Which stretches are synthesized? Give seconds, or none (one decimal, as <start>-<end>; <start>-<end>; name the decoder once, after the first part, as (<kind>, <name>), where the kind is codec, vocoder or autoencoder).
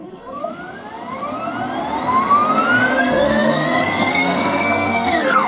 0.0-0.4 (codec, SNAC); 3.0-5.5